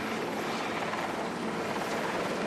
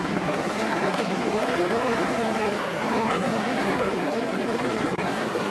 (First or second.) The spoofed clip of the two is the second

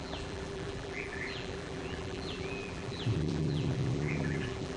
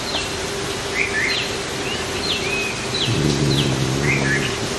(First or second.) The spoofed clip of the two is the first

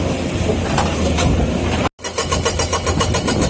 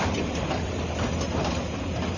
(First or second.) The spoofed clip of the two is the second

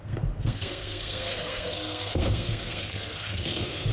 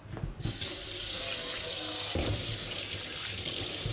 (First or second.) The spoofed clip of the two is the first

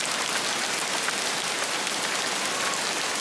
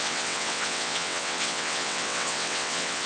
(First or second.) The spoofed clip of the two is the second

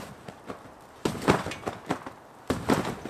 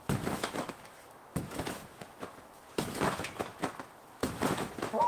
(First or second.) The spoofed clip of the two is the second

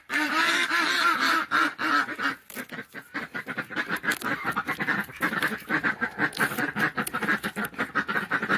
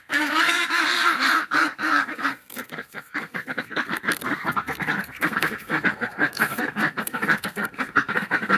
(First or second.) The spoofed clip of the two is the second